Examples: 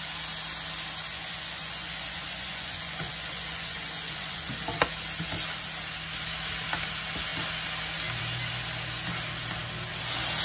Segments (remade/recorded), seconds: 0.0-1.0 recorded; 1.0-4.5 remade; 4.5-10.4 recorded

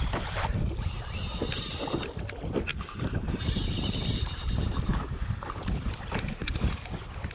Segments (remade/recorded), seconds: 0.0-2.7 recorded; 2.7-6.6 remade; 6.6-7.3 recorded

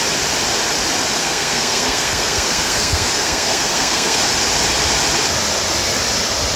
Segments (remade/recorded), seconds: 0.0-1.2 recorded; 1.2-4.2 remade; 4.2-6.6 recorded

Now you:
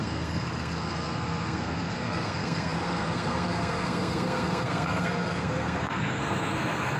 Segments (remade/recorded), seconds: 0.0-7.0 remade

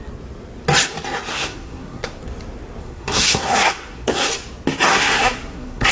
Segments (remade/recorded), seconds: 0.0-1.3 recorded; 1.3-2.2 remade; 2.2-2.8 recorded; 2.8-4.3 remade; 4.3-4.9 recorded; 4.9-5.9 remade

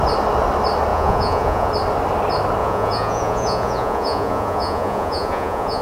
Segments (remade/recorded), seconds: 0.0-0.9 recorded; 0.9-1.7 remade; 1.7-2.6 recorded; 2.6-5.8 remade